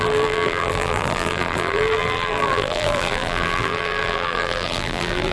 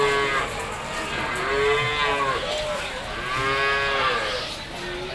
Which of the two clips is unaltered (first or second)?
second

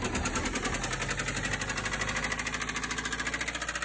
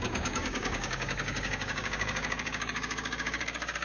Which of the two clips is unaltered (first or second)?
first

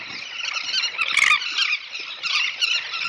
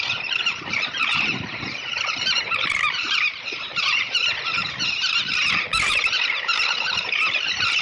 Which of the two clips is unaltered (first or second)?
first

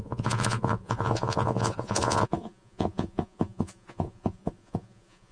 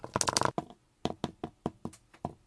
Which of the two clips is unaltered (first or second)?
second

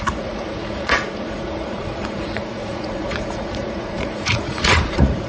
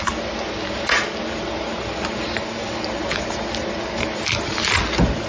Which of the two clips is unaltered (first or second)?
second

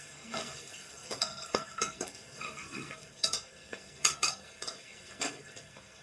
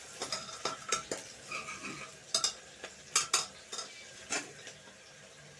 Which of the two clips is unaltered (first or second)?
second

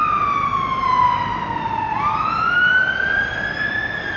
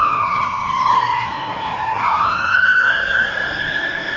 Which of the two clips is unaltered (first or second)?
first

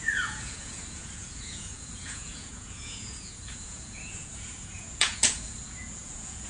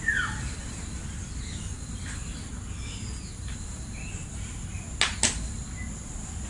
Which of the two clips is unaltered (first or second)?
second